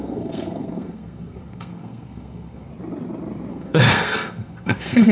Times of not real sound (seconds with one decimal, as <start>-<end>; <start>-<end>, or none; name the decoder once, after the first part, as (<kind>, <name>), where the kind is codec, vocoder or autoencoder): 0.0-2.7 (codec, SNAC); 3.5-5.1

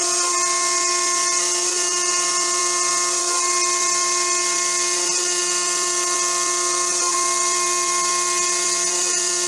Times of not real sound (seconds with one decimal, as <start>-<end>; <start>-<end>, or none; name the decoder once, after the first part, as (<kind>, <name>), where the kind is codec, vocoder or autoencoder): none

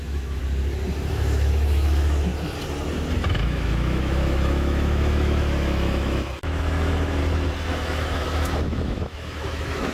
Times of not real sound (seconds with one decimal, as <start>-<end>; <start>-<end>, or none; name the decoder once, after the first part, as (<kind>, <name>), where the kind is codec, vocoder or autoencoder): 0.0-0.4 (autoencoder, DAC-VAE); 1.1-2.3; 3.3-7.2; 7.7-9.9

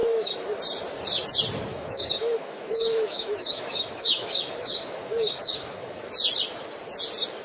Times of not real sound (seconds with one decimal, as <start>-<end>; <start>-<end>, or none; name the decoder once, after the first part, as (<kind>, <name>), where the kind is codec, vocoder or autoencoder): 0.0-0.6 (autoencoder, DAC-VAE); 1.7-6.1

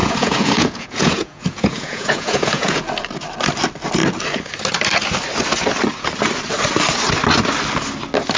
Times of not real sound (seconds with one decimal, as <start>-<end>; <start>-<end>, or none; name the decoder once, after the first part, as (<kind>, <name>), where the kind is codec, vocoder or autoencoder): 0.0-2.8 (vocoder, Vocos)

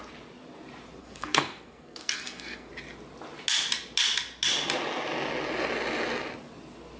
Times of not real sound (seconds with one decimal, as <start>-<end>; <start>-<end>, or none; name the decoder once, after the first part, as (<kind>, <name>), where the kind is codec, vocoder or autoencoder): 1.0-2.7 (codec, SNAC)

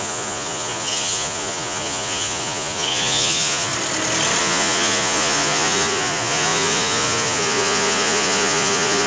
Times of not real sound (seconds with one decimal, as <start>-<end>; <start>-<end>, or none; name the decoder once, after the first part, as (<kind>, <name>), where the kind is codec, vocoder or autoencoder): 0.0-3.7 (vocoder, Vocos); 4.4-9.1

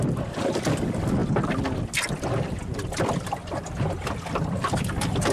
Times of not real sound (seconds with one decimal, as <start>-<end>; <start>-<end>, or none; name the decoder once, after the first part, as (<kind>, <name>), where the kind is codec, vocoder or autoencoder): none